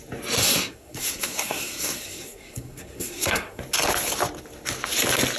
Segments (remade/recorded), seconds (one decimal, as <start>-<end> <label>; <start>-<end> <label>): 0.0-0.4 recorded; 0.4-3.6 remade; 3.6-5.4 recorded